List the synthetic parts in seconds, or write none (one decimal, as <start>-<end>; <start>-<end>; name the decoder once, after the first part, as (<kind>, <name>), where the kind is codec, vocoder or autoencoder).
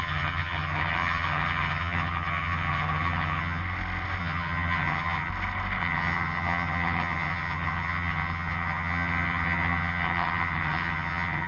0.0-3.6 (vocoder, HiFi-GAN); 4.2-5.3; 5.8-11.5